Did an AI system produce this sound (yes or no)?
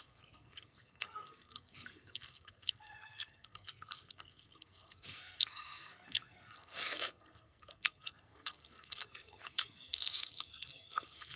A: yes